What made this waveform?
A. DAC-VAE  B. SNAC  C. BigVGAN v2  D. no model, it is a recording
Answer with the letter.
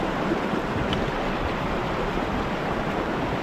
C